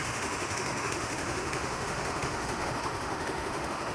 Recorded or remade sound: remade